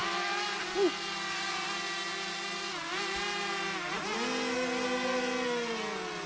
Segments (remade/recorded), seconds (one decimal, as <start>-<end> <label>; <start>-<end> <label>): 0.0-6.3 recorded